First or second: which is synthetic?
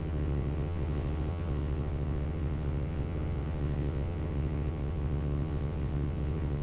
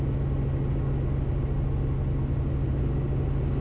first